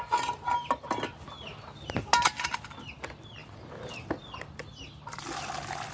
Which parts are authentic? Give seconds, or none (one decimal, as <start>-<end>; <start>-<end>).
0.0-5.9